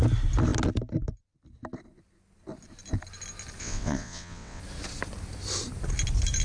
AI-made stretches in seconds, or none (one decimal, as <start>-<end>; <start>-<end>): 3.6-4.6